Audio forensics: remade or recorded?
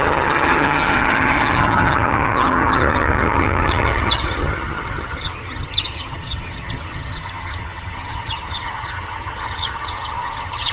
remade